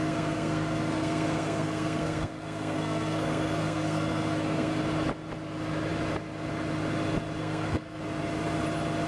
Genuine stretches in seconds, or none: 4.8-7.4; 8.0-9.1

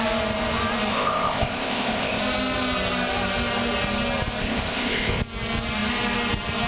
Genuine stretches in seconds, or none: 0.0-0.9; 2.2-4.4; 5.2-6.7

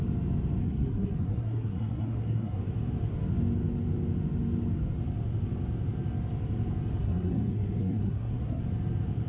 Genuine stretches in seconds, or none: 0.0-0.6; 2.6-7.0; 8.6-9.3

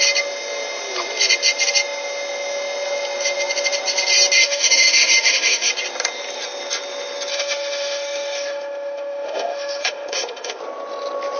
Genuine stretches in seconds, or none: 0.0-4.4; 5.7-7.3; 10.6-11.4

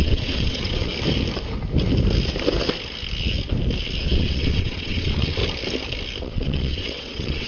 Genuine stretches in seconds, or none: 0.9-4.0; 5.4-6.2

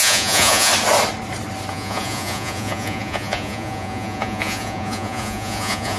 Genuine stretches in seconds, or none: 0.7-1.7

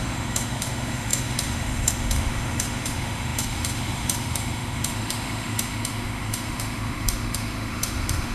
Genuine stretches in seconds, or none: none